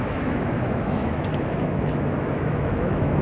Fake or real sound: fake